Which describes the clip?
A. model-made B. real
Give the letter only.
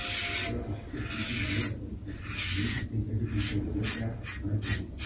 B